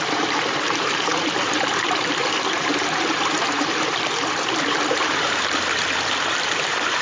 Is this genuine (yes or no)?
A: no